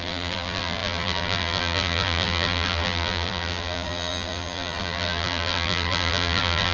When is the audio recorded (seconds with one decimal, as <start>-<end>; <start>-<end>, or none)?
none

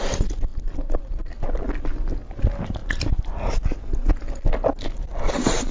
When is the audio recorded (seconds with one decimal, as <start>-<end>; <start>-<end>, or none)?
0.0-0.5; 1.1-5.7

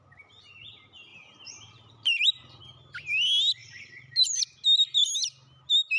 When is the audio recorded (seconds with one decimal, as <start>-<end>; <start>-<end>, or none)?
0.0-1.1; 2.6-3.6; 4.4-6.0

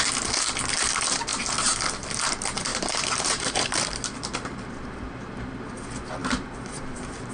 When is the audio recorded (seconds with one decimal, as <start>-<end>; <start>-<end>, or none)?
0.0-2.7; 3.9-6.2

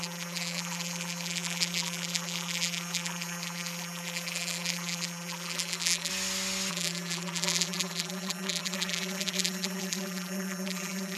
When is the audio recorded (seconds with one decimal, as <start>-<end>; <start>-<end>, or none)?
6.1-6.7

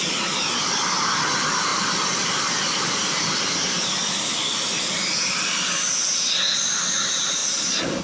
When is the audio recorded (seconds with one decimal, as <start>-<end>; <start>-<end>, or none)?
0.0-1.7; 6.4-7.4

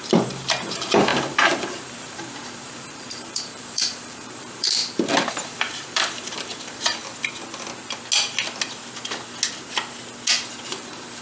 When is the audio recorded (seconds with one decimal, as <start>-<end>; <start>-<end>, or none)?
4.8-5.3; 7.1-10.7